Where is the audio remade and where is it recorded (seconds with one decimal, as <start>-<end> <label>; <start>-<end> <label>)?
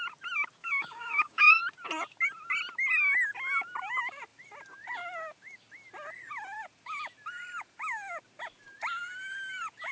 0.0-0.6 recorded; 0.6-1.6 remade; 1.6-9.9 recorded